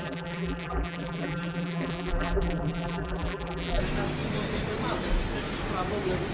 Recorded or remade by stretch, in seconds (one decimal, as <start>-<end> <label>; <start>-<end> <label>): 0.0-3.8 remade; 3.8-6.3 recorded